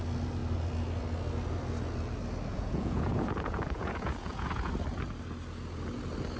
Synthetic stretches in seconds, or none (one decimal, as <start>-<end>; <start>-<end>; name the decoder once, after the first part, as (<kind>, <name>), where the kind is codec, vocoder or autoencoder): 2.5-4.7 (vocoder, Vocos)